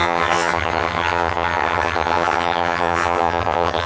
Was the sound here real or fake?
fake